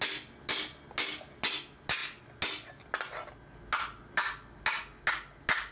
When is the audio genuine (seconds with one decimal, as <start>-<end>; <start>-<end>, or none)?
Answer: 0.0-5.7